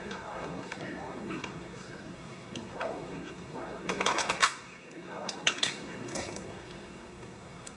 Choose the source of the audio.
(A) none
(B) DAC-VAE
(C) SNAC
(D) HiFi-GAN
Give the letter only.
C